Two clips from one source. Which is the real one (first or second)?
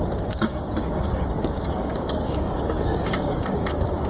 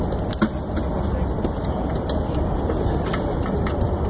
second